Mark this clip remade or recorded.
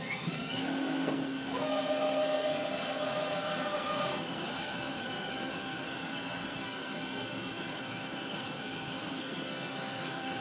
remade